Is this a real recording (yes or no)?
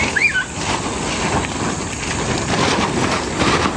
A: yes